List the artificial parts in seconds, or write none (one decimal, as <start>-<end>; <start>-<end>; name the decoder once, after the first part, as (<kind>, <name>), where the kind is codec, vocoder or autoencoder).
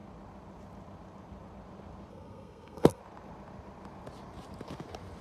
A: 2.1-3.0 (codec, SNAC)